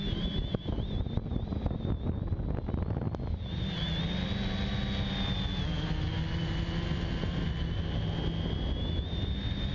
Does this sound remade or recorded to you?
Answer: recorded